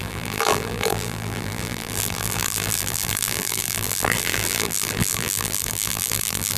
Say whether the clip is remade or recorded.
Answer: remade